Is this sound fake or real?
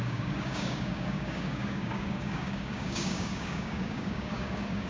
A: fake